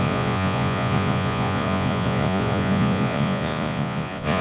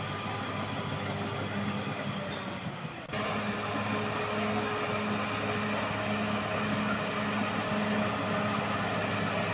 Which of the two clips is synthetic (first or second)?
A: first